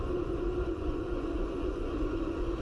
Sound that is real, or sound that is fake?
fake